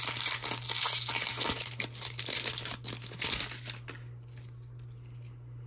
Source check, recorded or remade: recorded